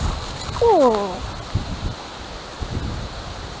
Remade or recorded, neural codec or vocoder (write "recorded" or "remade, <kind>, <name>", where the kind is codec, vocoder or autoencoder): recorded